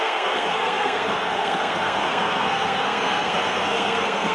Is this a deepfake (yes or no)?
yes